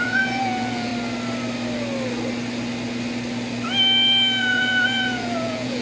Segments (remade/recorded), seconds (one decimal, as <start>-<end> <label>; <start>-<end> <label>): 0.0-0.9 remade; 0.9-4.4 recorded; 4.4-5.8 remade

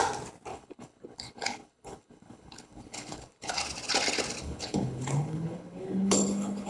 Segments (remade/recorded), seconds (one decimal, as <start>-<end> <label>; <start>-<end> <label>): 0.0-0.5 recorded; 0.5-3.6 remade; 3.6-4.4 recorded; 4.4-6.7 remade

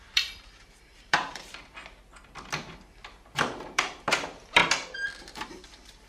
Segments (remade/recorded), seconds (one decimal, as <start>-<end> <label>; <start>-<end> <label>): 0.0-2.1 remade; 2.1-2.7 recorded; 2.7-4.6 remade; 4.6-5.2 recorded; 5.2-6.1 remade

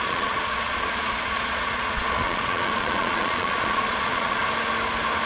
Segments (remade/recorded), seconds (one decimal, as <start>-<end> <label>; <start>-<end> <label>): 0.0-4.4 remade; 4.4-5.3 recorded

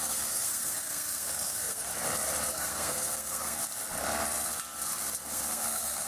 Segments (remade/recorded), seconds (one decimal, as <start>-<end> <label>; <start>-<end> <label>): 0.0-1.9 remade; 1.9-2.5 recorded; 2.5-3.6 remade; 3.6-5.2 recorded; 5.2-6.1 remade

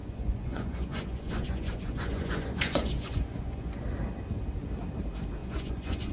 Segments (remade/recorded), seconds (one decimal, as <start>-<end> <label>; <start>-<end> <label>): 0.0-3.7 remade; 3.7-5.4 recorded; 5.4-6.1 remade

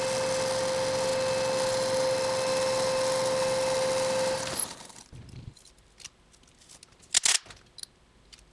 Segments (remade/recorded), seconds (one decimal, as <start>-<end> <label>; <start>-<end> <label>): 0.0-8.5 recorded